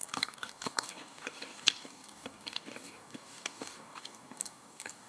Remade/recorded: remade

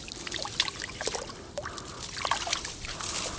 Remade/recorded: recorded